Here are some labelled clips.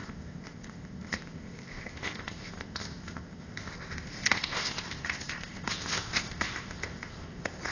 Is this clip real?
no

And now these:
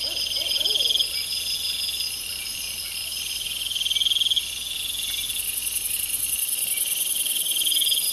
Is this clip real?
yes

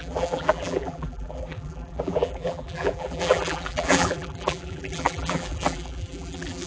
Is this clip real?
no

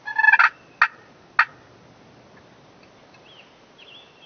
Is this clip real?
yes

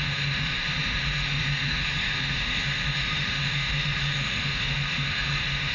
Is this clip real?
no